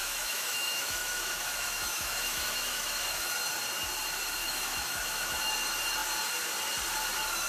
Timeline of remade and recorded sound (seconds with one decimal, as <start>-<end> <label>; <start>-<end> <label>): 0.0-3.3 remade; 3.3-4.4 recorded; 4.4-5.5 remade; 5.5-7.5 recorded